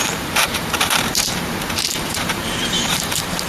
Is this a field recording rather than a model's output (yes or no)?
no